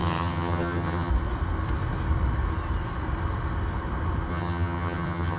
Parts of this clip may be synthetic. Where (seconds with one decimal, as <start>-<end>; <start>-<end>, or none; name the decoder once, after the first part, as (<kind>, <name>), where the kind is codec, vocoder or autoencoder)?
0.0-1.1 (vocoder, HiFi-GAN); 4.3-5.4